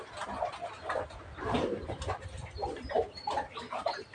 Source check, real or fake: fake